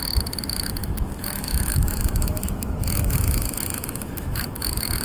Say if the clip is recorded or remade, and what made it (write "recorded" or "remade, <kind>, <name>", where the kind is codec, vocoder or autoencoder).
remade, autoencoder, DAC-VAE